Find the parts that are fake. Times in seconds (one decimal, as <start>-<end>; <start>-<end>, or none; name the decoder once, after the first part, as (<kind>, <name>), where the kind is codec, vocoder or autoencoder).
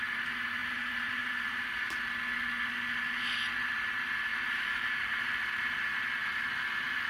0.6-2.0 (vocoder, BigVGAN v2); 4.3-5.8; 6.2-7.1